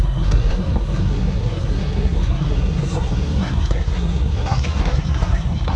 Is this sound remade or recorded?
remade